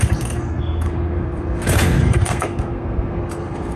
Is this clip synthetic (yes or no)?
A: yes